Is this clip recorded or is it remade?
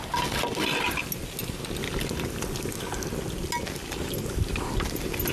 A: recorded